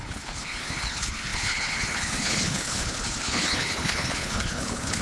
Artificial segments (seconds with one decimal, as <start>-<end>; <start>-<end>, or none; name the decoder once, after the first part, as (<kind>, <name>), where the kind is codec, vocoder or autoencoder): 0.0-5.0 (codec, HILCodec)